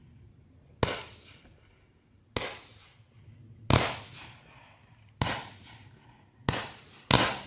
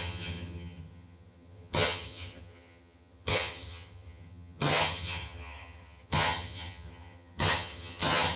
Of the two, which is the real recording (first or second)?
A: first